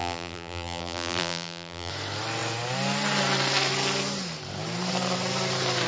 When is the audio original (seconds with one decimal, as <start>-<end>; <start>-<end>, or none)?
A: 1.9-5.9